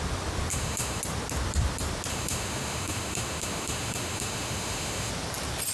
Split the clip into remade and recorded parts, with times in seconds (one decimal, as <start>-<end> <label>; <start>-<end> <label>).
0.0-0.5 recorded; 0.5-1.0 remade; 1.0-2.1 recorded; 2.1-5.1 remade; 5.1-5.7 recorded